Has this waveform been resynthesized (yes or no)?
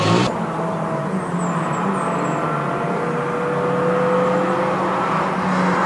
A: no